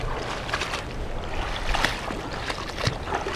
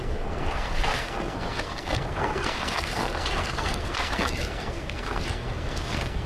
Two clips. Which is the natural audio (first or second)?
first